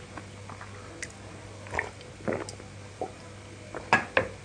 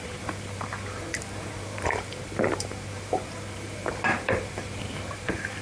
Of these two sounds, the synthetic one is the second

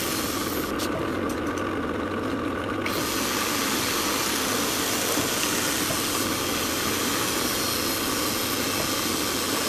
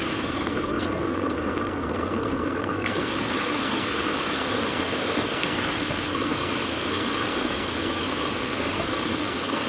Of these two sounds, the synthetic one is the second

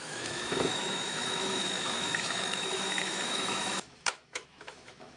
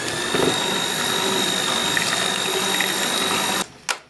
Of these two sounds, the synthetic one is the first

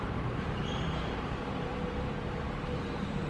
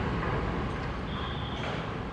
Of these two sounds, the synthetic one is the first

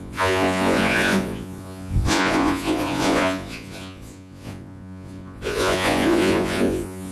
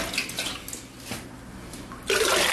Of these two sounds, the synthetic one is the first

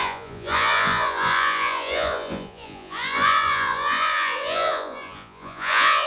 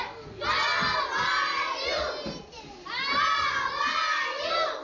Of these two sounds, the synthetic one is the first